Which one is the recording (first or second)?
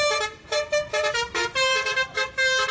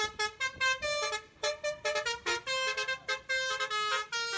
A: second